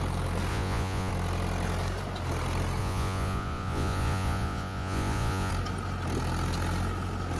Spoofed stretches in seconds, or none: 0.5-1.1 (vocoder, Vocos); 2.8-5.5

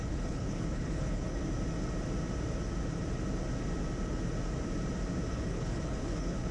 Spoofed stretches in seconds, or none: 0.0-1.4 (codec, HILCodec); 5.3-6.5

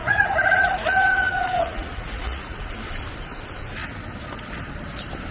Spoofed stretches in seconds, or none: 0.0-2.8 (vocoder, Vocos)

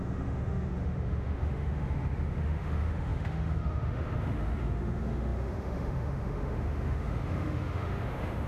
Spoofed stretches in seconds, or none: 0.0-8.5 (autoencoder, DAC-VAE)

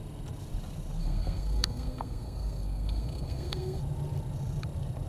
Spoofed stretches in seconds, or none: 1.0-3.8 (codec, SNAC)

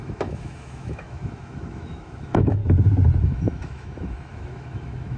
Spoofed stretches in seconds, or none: 0.0-2.6 (autoencoder, DAC-VAE); 3.2-5.2

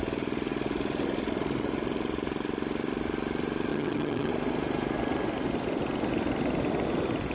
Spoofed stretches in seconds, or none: 3.7-4.3 (vocoder, HiFi-GAN)

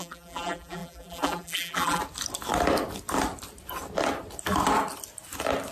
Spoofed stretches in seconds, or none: 0.0-2.0 (vocoder, BigVGAN v2)